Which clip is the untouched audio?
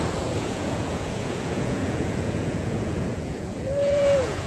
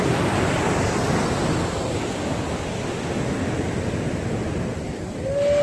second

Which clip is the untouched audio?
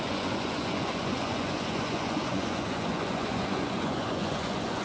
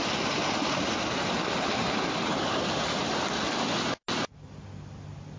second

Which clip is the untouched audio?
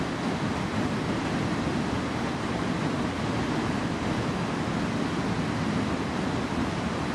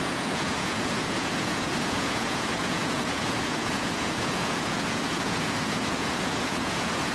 first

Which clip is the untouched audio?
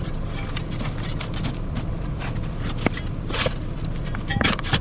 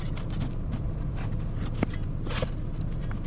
second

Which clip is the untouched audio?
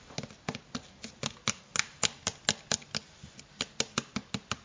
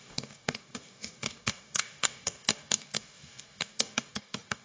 first